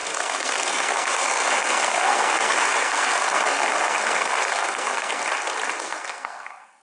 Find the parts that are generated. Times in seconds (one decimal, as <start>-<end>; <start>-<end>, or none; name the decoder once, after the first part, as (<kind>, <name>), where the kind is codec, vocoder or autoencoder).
0.0-5.2 (codec, SNAC); 5.8-6.8